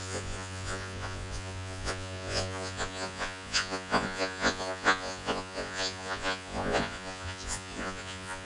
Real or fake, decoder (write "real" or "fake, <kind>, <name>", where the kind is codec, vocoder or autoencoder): fake, vocoder, Vocos